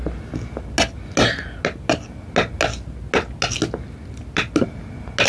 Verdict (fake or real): real